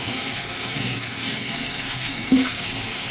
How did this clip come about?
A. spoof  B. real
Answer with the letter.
A